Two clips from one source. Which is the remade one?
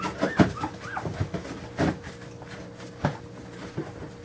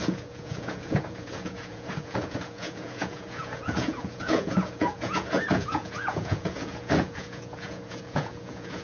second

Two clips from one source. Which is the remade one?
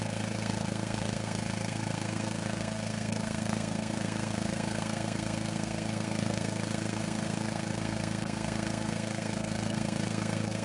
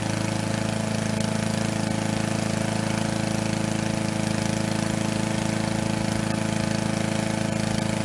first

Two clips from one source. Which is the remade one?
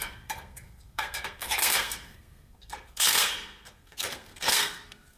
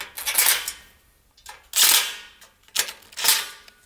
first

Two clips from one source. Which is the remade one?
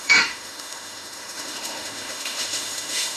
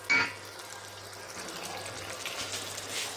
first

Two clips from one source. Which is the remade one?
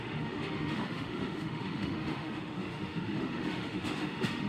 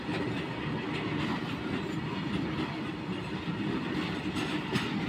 first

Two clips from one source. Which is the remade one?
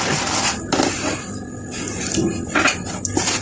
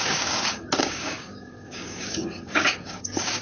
second